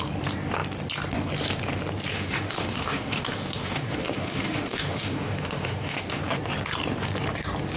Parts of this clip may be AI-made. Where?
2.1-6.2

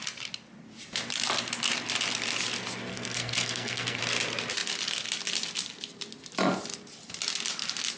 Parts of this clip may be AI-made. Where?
2.9-4.0

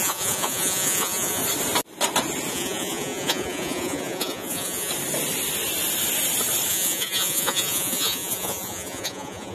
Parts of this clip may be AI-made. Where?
0.0-1.4; 2.5-4.9; 6.7-9.5

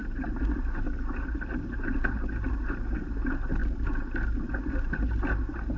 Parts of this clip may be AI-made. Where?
none

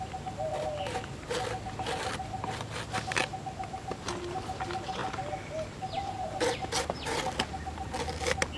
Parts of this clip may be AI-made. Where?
none

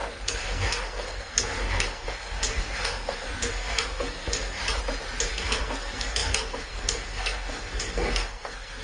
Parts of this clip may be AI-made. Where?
0.0-4.6; 5.3-8.8